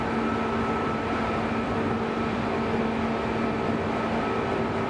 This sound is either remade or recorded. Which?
remade